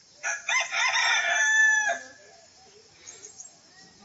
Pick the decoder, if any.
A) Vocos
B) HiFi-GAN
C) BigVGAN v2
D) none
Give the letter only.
D